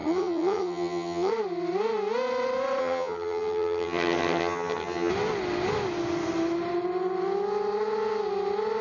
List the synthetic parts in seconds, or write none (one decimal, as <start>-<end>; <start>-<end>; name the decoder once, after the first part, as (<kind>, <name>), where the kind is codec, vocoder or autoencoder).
0.0-1.3 (vocoder, HiFi-GAN); 2.8-5.1